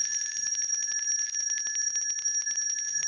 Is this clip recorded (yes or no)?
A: yes